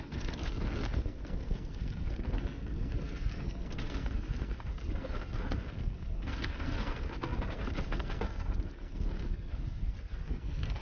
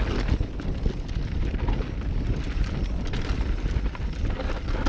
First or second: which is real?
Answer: second